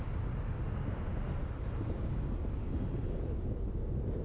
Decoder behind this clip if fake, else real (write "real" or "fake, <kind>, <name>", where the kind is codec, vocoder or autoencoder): real